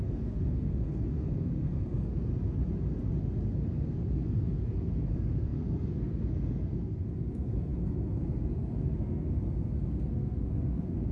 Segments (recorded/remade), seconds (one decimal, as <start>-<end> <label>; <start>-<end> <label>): 0.0-2.3 remade; 2.3-3.2 recorded; 3.2-11.1 remade